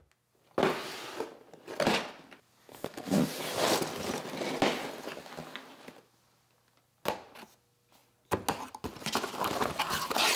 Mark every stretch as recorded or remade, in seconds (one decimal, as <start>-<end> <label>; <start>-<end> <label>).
0.0-2.7 recorded; 2.7-3.2 remade; 3.2-10.4 recorded